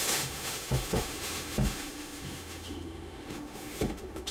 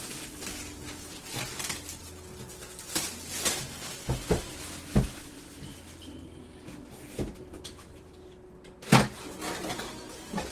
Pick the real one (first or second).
second